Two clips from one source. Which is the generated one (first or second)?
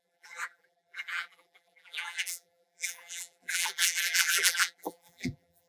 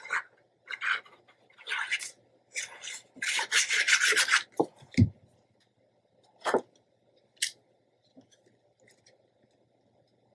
first